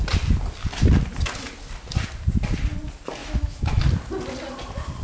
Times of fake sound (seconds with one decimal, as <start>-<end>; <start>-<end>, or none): 3.2-3.8